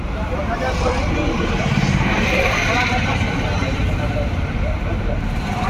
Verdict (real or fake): fake